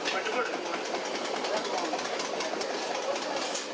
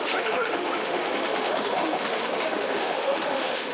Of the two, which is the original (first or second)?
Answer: first